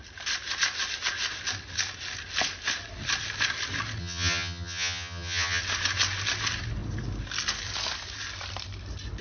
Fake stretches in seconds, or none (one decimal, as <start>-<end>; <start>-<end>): 4.0-5.6